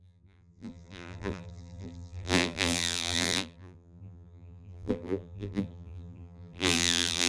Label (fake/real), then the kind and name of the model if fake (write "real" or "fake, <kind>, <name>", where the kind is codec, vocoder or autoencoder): fake, vocoder, BigVGAN v2